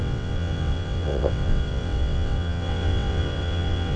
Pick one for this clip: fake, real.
fake